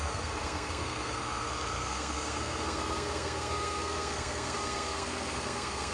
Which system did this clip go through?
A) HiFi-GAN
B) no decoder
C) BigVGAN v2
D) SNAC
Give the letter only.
D